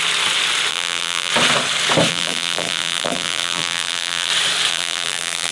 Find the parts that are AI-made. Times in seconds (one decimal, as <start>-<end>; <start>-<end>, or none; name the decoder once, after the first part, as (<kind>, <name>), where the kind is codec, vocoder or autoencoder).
0.7-1.3 (vocoder, BigVGAN v2); 2.1-4.3; 4.7-5.5